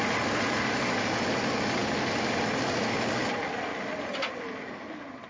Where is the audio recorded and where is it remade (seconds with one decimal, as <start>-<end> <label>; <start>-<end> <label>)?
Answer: 0.0-5.3 recorded